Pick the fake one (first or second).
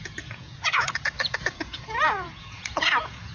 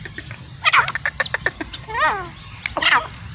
first